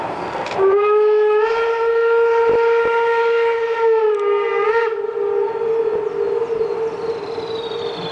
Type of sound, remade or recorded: recorded